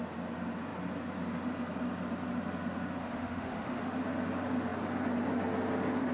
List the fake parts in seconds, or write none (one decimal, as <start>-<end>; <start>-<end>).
3.0-3.8